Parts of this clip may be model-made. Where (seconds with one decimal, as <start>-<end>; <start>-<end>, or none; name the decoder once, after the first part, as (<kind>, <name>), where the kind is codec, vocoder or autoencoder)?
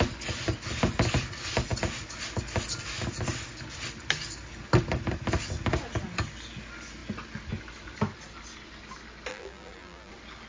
9.3-10.1 (vocoder, BigVGAN v2)